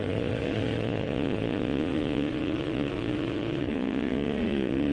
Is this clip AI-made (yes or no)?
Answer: yes